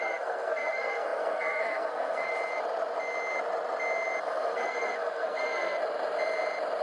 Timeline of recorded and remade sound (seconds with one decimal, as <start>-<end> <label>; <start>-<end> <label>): 0.0-2.3 remade; 2.3-4.2 recorded; 4.2-5.8 remade; 5.8-6.8 recorded